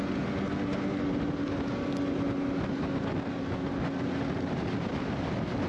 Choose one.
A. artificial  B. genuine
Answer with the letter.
B